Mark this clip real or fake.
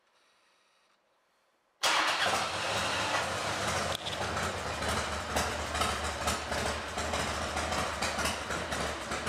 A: real